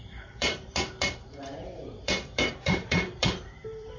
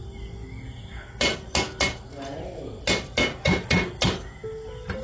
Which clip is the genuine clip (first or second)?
second